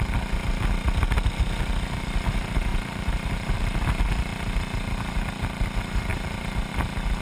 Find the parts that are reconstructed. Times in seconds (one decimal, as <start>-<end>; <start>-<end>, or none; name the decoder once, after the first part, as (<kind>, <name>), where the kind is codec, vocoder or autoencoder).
2.7-3.6 (vocoder, BigVGAN v2); 6.1-6.7